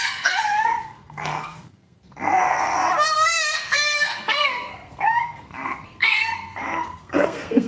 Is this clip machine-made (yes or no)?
yes